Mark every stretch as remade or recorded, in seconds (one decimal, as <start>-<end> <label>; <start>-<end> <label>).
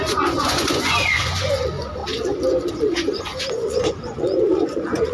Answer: 0.0-2.0 remade; 2.0-2.7 recorded; 2.7-5.1 remade